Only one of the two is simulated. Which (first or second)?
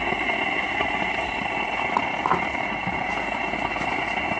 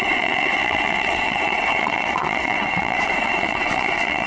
second